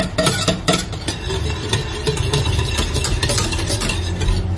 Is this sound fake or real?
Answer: real